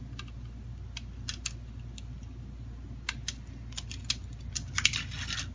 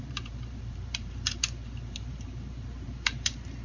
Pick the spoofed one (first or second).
second